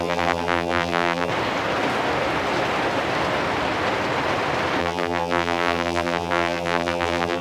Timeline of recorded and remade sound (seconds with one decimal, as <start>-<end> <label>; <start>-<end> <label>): 0.0-1.3 remade; 1.3-4.8 recorded; 4.8-7.4 remade